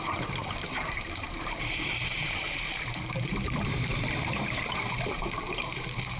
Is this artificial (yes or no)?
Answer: yes